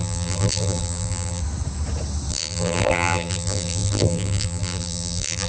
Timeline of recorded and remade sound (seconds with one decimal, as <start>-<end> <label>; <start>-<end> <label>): 0.0-1.4 remade; 1.4-2.3 recorded; 2.3-5.5 remade